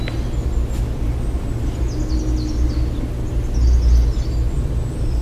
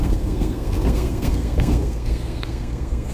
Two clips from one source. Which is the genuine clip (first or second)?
first